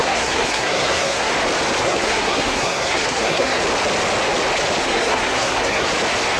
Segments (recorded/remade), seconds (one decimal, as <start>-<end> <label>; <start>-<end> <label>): 0.0-1.3 remade; 1.3-1.8 recorded; 1.8-3.6 remade; 3.6-4.8 recorded; 4.8-5.9 remade; 5.9-6.4 recorded